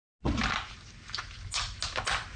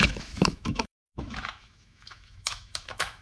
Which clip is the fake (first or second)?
second